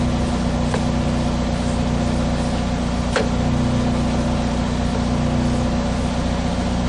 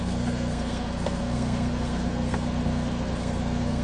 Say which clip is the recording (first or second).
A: first